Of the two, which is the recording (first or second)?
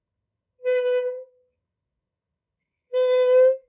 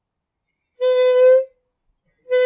second